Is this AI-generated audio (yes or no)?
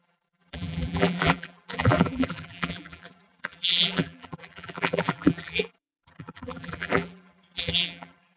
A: yes